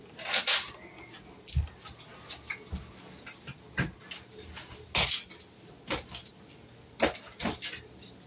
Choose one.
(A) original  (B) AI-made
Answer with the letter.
A